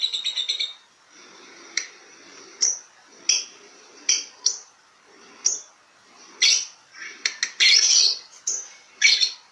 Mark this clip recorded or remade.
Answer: recorded